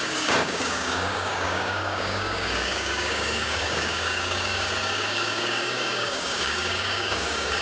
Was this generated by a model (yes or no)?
yes